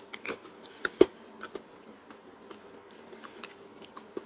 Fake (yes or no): no